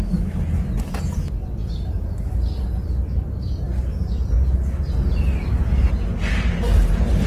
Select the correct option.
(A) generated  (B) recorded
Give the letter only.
B